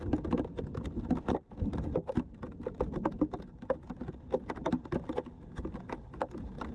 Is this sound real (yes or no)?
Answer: yes